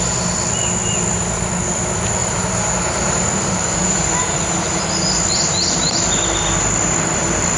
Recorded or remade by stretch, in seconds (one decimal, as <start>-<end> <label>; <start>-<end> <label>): 0.0-2.2 recorded; 2.2-4.8 remade; 4.8-7.6 recorded